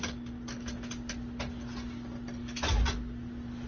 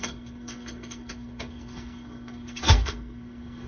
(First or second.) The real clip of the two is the first